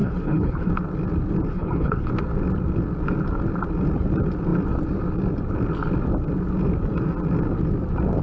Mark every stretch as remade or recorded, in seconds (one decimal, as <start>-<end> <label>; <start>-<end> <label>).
0.0-0.7 remade; 0.7-1.5 recorded; 1.5-2.1 remade; 2.1-8.2 recorded